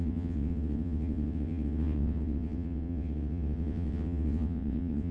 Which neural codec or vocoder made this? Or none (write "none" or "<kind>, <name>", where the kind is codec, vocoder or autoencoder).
vocoder, WaveNeXt